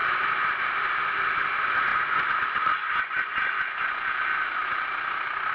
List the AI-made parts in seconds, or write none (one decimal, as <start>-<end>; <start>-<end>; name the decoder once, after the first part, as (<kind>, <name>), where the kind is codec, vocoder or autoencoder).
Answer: 1.9-4.8 (vocoder, Vocos)